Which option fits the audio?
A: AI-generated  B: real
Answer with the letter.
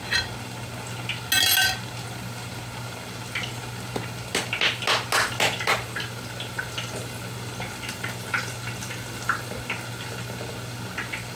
B